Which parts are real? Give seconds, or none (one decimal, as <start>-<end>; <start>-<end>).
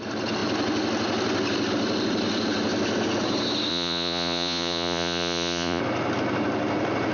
0.0-3.7; 5.8-7.1